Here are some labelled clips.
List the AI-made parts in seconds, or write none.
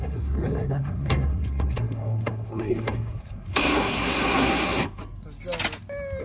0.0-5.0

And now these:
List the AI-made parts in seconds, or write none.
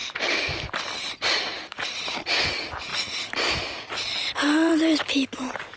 0.0-5.8